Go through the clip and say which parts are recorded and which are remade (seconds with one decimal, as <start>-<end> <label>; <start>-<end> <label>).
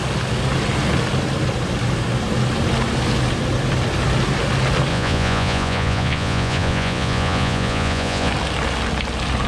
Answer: 0.0-4.9 recorded; 4.9-8.3 remade; 8.3-9.5 recorded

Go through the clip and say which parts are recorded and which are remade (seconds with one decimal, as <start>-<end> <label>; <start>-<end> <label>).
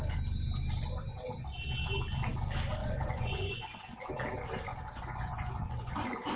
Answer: 0.0-2.8 recorded; 2.8-4.1 remade; 4.1-4.7 recorded; 4.7-5.9 remade; 5.9-6.4 recorded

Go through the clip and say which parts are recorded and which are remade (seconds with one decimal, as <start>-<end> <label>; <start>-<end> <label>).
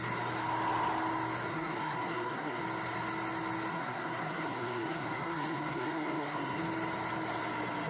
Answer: 0.0-1.5 recorded; 1.5-2.6 remade; 2.6-3.7 recorded; 3.7-6.6 remade; 6.6-7.9 recorded